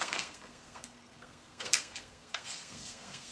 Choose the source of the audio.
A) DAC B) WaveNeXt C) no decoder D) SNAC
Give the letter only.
D